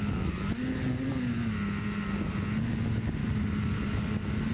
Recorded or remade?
recorded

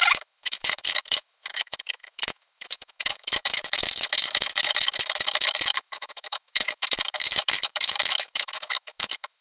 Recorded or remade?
remade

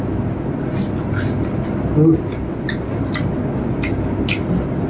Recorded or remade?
recorded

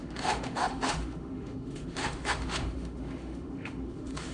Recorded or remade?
remade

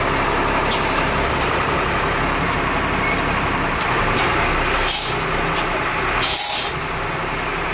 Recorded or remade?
recorded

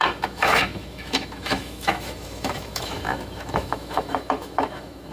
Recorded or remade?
remade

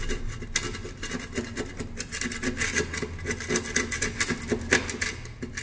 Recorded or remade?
recorded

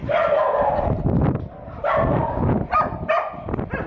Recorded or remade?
recorded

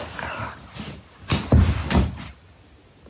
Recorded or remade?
recorded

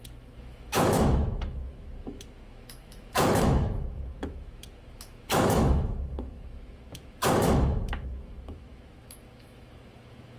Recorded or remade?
remade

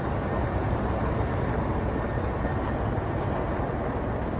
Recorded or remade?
recorded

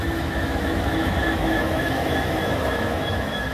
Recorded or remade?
remade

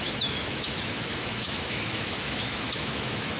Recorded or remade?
remade